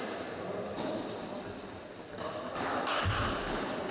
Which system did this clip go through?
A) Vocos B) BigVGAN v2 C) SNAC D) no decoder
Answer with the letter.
D